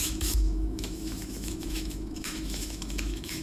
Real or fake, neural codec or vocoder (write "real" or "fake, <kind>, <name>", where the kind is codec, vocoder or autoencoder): fake, autoencoder, DAC-VAE